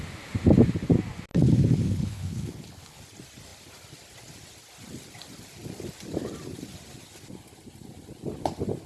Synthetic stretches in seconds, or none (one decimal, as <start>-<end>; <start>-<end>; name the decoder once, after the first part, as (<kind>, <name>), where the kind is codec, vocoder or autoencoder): 1.3-3.0 (codec, HILCodec)

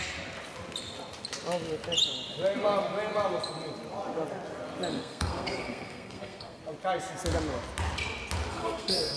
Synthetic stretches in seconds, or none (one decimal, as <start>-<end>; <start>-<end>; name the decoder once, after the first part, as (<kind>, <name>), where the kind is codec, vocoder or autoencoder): 4.9-6.6 (codec, SNAC); 8.5-9.2

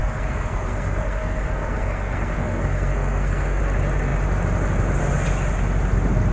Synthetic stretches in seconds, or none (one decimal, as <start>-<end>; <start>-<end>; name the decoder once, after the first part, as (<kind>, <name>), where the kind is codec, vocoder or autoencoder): 0.0-3.6 (codec, SNAC)